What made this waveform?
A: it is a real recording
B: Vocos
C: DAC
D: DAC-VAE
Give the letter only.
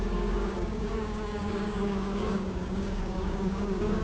C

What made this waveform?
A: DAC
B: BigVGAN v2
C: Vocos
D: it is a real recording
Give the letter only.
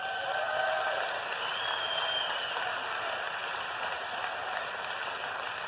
D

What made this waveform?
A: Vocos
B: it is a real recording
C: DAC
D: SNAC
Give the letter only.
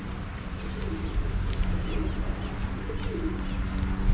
B